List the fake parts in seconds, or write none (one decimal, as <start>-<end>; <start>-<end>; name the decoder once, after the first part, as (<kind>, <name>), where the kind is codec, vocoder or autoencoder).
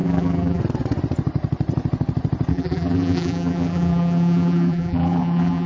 0.0-0.6 (vocoder, BigVGAN v2); 2.5-5.7